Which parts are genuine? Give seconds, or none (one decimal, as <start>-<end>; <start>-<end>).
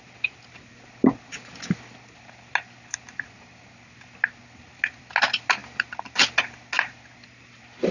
0.0-7.9